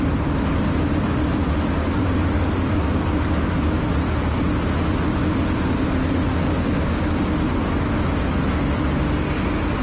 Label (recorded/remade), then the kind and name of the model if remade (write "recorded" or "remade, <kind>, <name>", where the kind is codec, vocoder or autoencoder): recorded